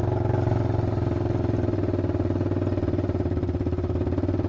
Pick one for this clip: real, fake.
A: real